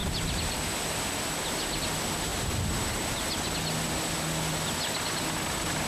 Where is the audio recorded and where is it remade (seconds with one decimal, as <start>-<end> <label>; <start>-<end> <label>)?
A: 0.0-5.9 recorded